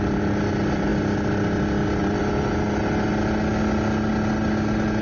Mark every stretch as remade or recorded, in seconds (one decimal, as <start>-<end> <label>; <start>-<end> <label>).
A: 0.0-5.0 recorded